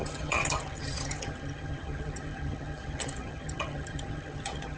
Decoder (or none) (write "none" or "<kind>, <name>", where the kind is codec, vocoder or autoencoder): vocoder, HiFi-GAN